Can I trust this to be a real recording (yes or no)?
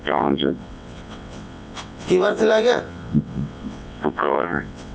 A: no